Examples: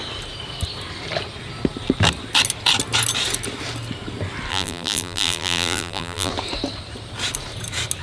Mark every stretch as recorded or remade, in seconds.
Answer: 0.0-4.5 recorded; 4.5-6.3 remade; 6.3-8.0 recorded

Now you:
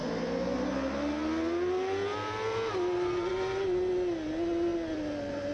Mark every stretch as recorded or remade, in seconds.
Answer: 0.0-5.5 recorded

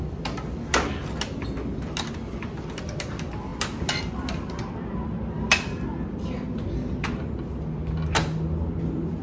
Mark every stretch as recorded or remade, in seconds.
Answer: 0.0-9.2 recorded

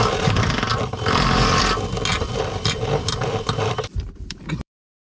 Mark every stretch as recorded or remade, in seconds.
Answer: 0.0-0.7 recorded; 0.7-1.6 remade; 1.6-2.1 recorded; 2.1-5.2 remade

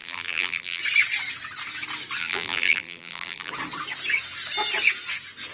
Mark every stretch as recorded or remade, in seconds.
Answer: 0.0-0.8 remade; 0.8-2.2 recorded; 2.2-3.5 remade; 3.5-5.5 recorded

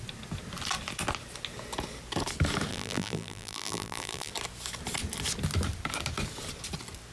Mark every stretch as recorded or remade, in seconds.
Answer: 0.0-2.7 recorded; 2.7-4.3 remade; 4.3-7.1 recorded